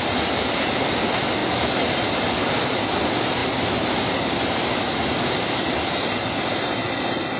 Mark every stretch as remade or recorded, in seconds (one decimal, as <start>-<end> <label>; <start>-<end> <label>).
0.0-7.4 recorded